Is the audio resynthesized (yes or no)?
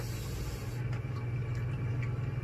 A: no